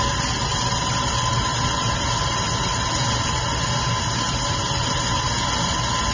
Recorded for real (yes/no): yes